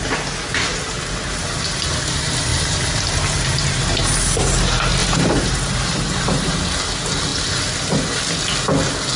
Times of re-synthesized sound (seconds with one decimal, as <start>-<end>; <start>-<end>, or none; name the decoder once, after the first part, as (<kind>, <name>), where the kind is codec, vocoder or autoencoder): 2.5-4.6 (vocoder, BigVGAN v2); 5.0-6.6